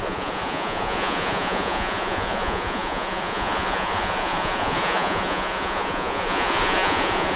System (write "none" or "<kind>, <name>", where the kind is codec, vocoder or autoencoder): vocoder, Vocos